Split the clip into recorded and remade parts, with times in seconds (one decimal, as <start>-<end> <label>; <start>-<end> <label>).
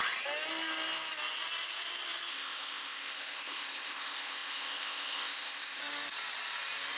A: 0.0-2.3 recorded; 2.3-5.8 remade; 5.8-7.0 recorded